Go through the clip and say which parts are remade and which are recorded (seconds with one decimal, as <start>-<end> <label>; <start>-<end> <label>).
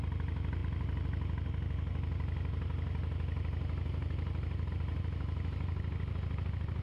0.0-6.8 recorded